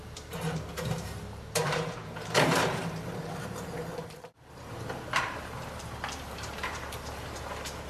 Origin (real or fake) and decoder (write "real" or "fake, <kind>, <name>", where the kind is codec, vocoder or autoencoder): fake, vocoder, BigVGAN v2